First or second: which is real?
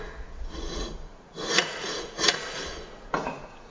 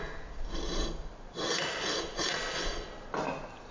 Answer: second